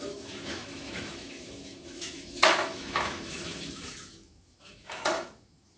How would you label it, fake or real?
fake